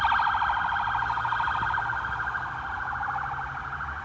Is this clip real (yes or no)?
yes